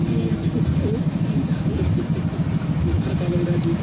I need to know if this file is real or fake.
real